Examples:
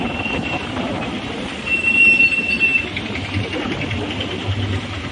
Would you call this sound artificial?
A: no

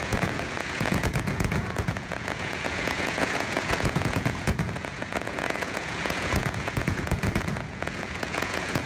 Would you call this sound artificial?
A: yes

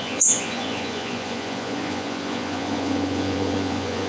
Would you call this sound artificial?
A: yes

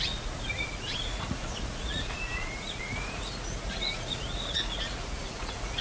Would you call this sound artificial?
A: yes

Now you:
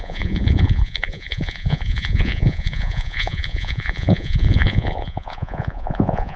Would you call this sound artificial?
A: yes